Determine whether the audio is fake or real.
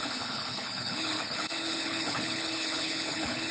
fake